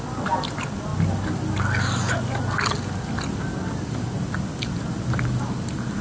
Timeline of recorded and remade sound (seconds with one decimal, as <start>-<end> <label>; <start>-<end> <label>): 0.0-6.0 recorded